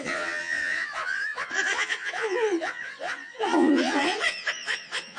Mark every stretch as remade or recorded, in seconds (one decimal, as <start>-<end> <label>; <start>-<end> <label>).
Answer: 0.0-5.2 remade